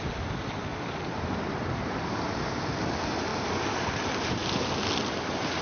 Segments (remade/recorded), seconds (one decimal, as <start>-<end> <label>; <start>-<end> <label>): 0.0-0.7 recorded; 0.7-2.7 remade; 2.7-5.6 recorded